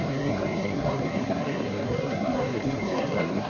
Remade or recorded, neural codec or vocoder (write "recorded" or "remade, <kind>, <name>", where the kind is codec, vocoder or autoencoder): remade, codec, SNAC